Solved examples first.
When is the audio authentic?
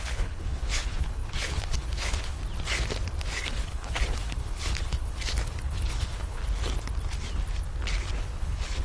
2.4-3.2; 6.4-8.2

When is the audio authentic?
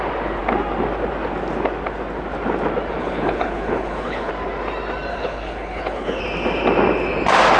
0.0-3.0; 4.3-5.1; 6.2-7.6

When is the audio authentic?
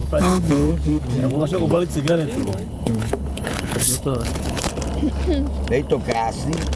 0.7-1.2; 4.7-6.8